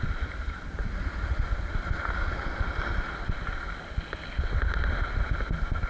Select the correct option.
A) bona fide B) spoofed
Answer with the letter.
A